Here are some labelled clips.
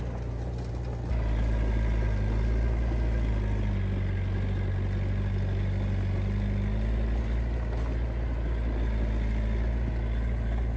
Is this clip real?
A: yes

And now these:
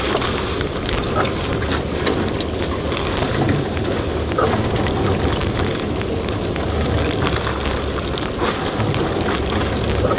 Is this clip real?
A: no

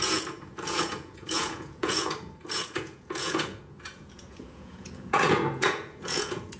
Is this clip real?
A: no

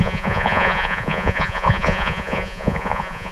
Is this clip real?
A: no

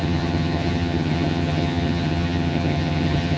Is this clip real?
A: no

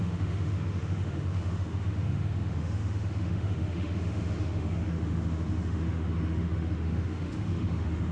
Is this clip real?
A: no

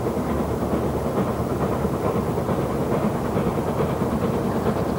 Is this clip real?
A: yes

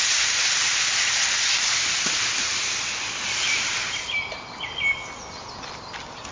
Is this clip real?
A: yes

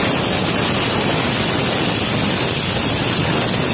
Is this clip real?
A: yes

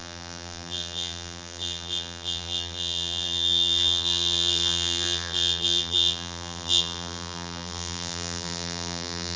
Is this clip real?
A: no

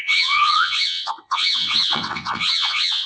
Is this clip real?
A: no